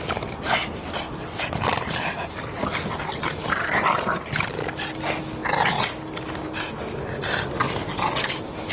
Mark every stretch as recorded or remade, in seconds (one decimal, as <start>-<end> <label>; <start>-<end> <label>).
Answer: 0.0-8.7 recorded